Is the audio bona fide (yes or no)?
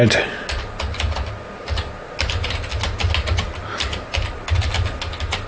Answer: yes